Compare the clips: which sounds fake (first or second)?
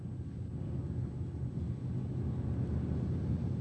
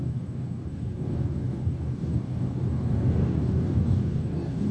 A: second